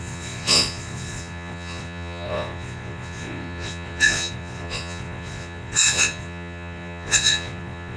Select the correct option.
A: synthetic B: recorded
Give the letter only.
A